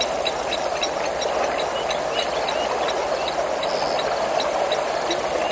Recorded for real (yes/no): yes